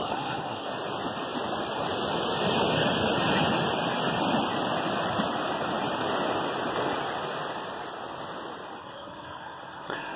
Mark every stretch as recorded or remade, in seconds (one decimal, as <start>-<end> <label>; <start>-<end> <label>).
0.0-0.7 remade; 0.7-8.8 recorded; 8.8-10.2 remade